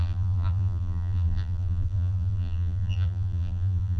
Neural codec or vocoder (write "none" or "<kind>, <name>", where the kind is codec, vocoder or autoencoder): vocoder, BigVGAN v2